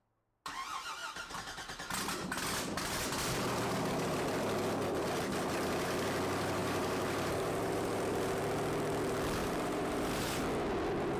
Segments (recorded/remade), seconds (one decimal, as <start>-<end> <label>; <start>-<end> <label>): 0.0-1.0 recorded; 1.0-2.0 remade; 2.0-6.6 recorded; 6.6-8.4 remade; 8.4-9.4 recorded; 9.4-10.4 remade; 10.4-11.2 recorded